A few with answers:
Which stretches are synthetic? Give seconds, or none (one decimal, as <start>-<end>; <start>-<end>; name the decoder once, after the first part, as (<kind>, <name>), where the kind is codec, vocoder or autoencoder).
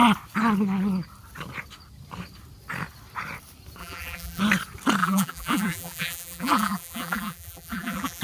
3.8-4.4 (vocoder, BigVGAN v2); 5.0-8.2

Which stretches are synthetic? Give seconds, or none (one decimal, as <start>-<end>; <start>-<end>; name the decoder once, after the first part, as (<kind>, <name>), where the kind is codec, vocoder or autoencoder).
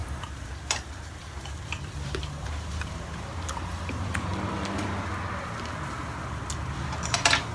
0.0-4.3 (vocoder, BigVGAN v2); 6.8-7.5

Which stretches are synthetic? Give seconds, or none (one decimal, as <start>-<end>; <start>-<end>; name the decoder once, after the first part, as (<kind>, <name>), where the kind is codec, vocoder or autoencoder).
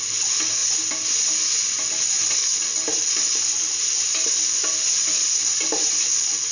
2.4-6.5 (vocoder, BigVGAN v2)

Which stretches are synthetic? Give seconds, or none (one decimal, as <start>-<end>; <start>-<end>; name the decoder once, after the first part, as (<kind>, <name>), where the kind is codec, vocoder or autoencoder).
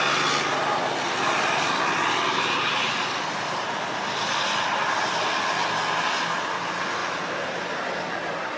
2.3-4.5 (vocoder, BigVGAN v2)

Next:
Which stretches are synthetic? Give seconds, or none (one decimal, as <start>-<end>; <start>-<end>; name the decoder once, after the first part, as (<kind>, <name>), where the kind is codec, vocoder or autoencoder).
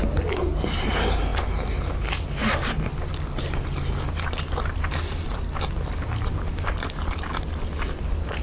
none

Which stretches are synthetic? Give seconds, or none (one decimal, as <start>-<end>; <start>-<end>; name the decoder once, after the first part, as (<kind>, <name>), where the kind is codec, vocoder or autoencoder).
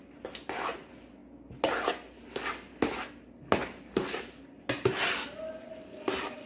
none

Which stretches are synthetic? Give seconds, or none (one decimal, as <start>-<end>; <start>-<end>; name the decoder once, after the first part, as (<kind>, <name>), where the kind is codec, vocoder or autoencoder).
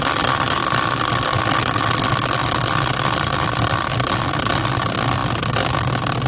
2.4-3.9 (vocoder, BigVGAN v2)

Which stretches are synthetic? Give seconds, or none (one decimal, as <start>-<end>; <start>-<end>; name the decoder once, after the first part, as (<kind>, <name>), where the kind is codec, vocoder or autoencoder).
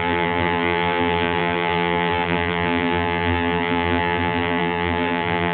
0.0-5.5 (vocoder, BigVGAN v2)